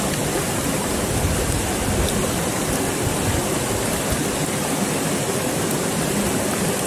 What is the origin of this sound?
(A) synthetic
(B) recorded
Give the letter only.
B